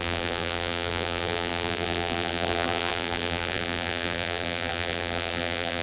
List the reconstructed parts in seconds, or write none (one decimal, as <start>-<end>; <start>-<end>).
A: 0.0-5.8